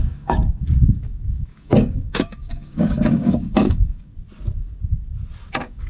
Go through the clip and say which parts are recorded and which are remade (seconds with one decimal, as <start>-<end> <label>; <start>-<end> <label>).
0.0-4.1 remade; 4.1-5.5 recorded; 5.5-5.9 remade